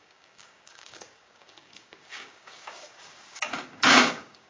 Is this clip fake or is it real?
fake